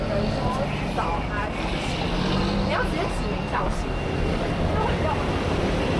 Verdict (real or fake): real